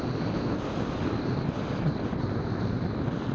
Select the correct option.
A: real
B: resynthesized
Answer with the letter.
A